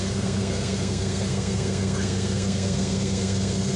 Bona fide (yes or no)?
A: no